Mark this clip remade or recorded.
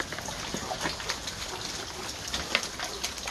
recorded